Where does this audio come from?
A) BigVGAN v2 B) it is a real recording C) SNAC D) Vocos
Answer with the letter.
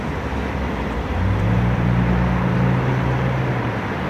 A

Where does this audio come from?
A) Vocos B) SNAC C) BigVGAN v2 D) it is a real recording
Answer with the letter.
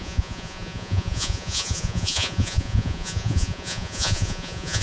A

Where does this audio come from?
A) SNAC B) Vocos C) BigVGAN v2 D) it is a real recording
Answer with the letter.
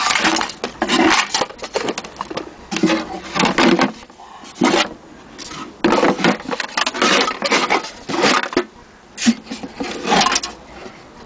D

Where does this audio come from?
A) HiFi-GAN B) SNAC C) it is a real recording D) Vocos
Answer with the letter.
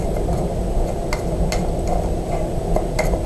C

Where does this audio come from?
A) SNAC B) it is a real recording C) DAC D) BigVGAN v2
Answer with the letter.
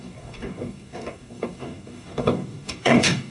C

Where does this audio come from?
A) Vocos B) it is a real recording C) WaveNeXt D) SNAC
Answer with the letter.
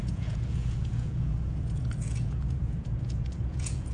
A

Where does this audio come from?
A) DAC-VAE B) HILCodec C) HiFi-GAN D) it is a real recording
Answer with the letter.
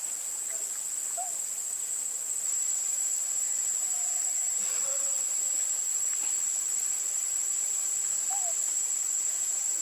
D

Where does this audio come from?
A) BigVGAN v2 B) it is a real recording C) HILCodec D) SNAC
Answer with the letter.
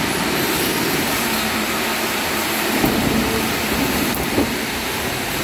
A